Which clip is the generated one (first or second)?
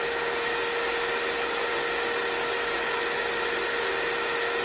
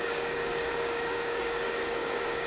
second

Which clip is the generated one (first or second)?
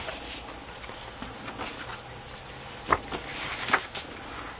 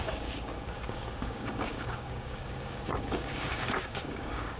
second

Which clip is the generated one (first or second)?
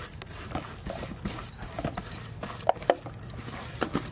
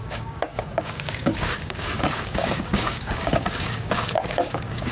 second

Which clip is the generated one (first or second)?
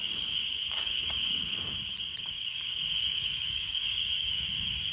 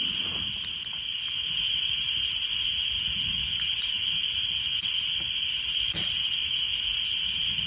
first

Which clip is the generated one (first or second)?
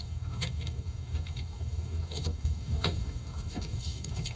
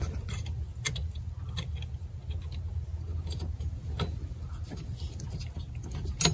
first